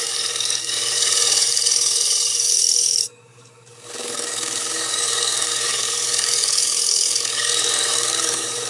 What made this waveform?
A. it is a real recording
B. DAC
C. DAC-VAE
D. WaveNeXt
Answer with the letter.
B